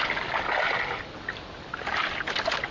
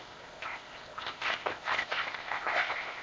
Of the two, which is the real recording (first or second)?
first